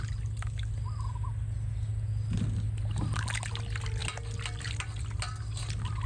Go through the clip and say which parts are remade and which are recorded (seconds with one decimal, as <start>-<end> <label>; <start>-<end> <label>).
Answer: 0.0-6.1 recorded